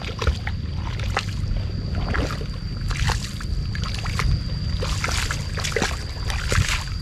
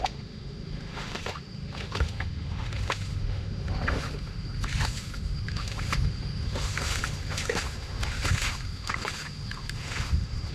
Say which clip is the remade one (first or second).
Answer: second